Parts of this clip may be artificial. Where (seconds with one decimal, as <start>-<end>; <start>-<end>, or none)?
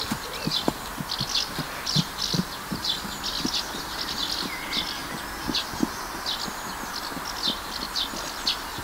none